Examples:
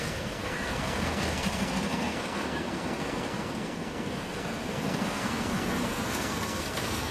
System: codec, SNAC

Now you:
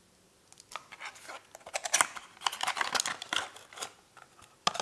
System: none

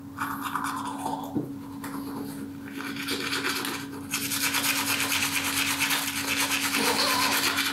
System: none